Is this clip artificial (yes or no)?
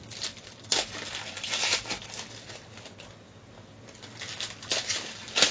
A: no